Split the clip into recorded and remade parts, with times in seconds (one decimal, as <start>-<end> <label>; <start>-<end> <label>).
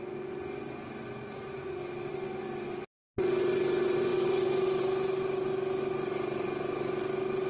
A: 0.0-7.5 recorded